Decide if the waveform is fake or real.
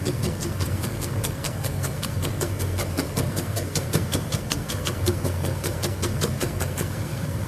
fake